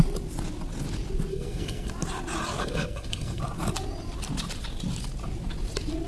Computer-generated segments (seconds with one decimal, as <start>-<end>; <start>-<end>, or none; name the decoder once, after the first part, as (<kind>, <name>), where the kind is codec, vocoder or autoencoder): 1.3-1.9 (codec, SNAC); 2.6-3.4

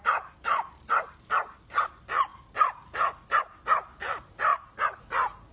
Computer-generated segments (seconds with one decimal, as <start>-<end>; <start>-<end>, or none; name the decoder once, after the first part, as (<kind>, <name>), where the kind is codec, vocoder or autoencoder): none

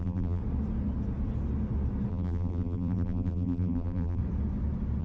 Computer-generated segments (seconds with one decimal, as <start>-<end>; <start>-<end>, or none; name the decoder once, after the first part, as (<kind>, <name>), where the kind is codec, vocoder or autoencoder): 0.0-0.4 (vocoder, BigVGAN v2); 2.1-4.2

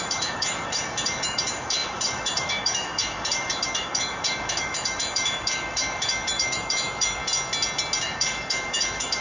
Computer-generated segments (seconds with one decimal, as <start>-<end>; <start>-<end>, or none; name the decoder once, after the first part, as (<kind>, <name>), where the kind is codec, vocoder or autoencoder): 0.0-7.2 (autoencoder, DAC-VAE); 8.0-9.2

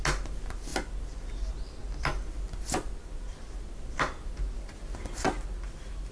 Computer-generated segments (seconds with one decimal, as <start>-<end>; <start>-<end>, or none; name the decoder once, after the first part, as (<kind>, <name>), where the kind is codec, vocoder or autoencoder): none

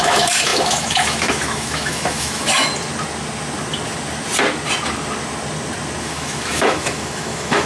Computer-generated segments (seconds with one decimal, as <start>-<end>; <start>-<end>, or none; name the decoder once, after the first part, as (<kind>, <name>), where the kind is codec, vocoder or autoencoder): 0.0-2.7 (autoencoder, DAC-VAE); 6.0-7.7

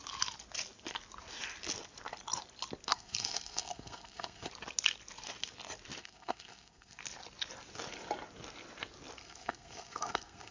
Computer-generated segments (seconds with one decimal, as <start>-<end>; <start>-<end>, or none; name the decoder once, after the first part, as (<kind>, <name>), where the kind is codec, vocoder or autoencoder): 2.9-4.5 (codec, SNAC); 6.0-7.0; 9.2-10.5